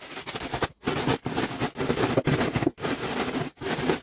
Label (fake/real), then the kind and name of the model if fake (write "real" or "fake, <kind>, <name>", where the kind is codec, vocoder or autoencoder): real